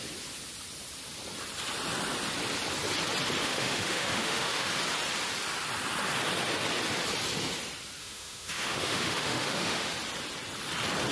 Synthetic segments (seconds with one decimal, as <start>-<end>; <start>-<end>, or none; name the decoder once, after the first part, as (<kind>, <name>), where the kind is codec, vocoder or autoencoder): 3.4-4.7 (autoencoder, DAC-VAE); 8.0-9.9